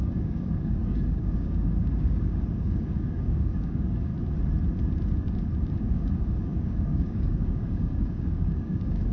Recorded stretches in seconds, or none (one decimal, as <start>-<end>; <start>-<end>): 4.1-5.8